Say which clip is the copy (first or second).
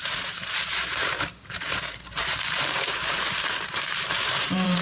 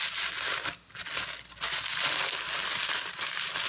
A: first